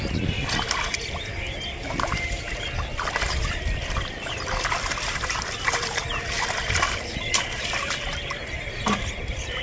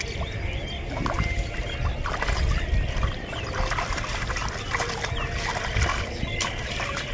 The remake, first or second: first